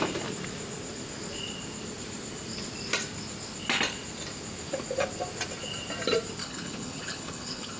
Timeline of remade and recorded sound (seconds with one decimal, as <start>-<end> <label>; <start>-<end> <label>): 0.0-6.4 recorded; 6.4-7.8 remade